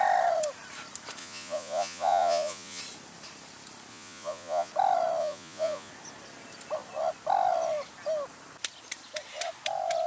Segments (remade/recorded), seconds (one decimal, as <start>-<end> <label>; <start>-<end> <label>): 0.0-1.2 recorded; 1.2-2.8 remade; 2.8-3.9 recorded; 3.9-4.7 remade; 4.7-5.2 recorded; 5.2-5.9 remade; 5.9-10.1 recorded